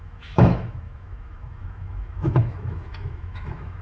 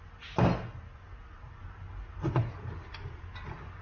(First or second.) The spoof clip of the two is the first